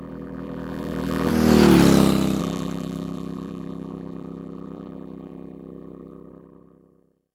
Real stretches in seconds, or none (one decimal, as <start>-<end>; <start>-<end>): 1.3-2.4